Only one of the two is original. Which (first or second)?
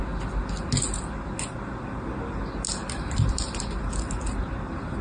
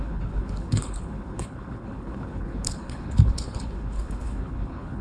first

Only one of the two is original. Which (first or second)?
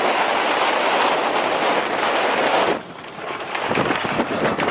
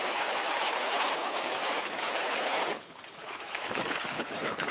first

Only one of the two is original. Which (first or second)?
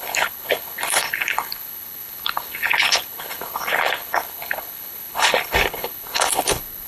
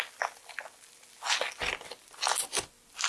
second